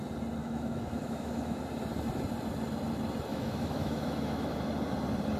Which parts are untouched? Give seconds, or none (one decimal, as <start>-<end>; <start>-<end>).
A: 0.0-0.4; 1.6-3.3; 4.6-5.4